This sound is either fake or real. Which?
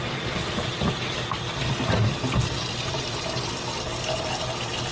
real